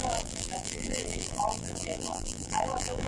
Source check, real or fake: fake